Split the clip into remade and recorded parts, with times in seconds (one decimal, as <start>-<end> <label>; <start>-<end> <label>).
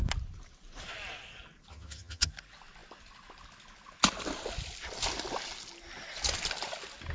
0.0-1.7 recorded; 1.7-2.3 remade; 2.3-7.1 recorded